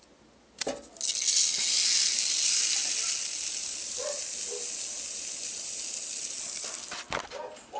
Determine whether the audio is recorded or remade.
recorded